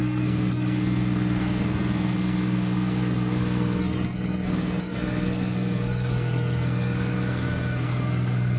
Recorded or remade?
remade